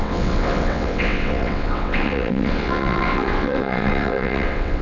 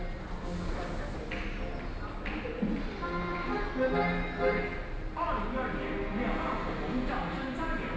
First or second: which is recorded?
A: second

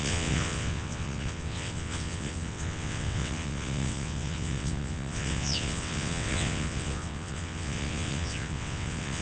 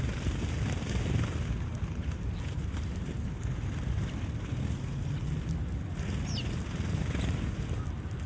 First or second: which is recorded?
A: second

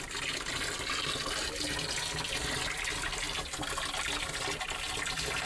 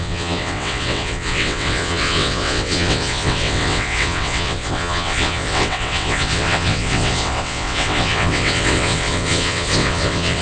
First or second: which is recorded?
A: first